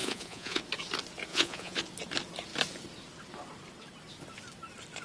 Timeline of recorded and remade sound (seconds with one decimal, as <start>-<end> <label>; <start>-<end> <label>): 0.0-0.6 remade; 0.6-1.3 recorded; 1.3-1.8 remade; 1.8-5.0 recorded